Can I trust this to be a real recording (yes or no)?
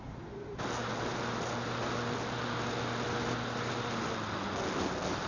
yes